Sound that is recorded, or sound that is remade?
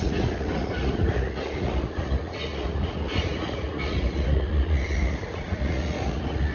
remade